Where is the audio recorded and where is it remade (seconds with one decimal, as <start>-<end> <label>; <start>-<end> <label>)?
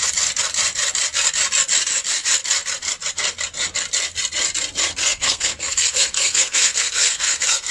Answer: 0.0-5.0 recorded; 5.0-7.7 remade